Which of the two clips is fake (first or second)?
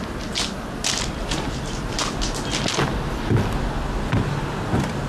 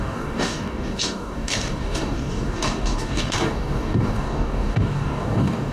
second